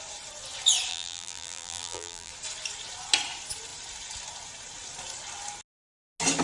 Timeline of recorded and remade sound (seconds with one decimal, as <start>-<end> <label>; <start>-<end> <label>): 0.0-0.9 recorded; 0.9-2.3 remade; 2.3-6.4 recorded